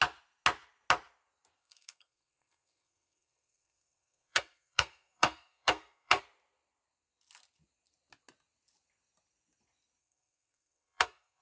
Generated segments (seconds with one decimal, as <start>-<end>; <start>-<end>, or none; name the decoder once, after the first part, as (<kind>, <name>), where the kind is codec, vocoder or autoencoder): 1.6-6.2 (codec, SNAC); 10.0-11.4